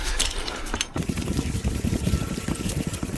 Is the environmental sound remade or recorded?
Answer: remade